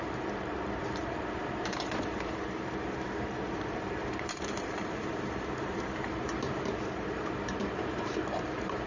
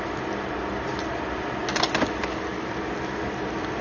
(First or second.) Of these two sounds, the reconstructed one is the first